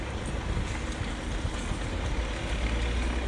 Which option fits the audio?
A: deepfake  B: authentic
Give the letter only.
B